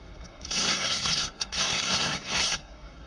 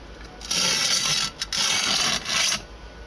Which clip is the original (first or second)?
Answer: second